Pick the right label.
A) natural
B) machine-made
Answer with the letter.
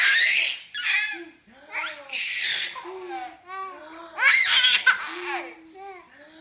A